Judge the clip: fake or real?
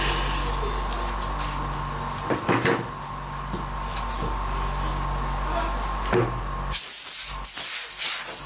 real